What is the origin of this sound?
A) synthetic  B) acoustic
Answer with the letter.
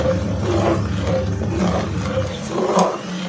B